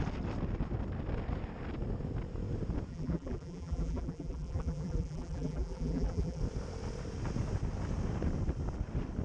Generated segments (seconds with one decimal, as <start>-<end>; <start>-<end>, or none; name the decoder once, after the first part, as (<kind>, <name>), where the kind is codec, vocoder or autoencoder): 2.9-6.4 (vocoder, BigVGAN v2)